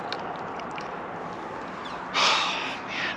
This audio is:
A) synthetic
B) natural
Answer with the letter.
B